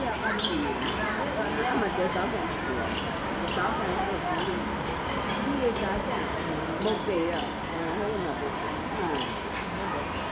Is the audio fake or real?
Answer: real